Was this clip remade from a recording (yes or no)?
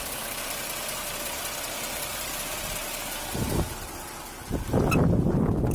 no